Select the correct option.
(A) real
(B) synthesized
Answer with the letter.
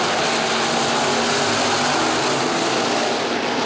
A